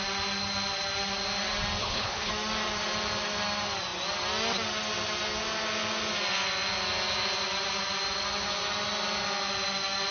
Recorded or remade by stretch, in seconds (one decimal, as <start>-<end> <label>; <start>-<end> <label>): 0.0-1.8 recorded; 1.8-2.3 remade; 2.3-10.1 recorded